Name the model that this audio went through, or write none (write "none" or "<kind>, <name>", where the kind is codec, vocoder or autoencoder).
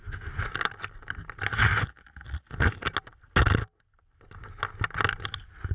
none